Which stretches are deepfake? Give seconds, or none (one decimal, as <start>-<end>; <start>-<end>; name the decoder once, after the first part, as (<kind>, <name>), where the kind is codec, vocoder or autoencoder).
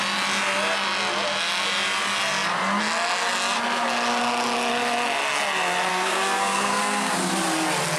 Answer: 5.9-7.1 (codec, SNAC)